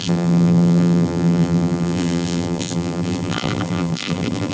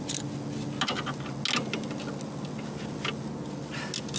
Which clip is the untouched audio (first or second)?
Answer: second